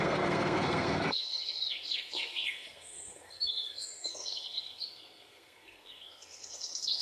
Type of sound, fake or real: fake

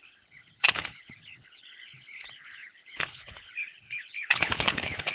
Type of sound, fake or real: fake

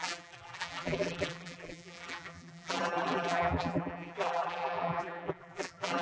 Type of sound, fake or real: fake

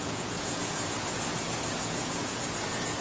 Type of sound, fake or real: fake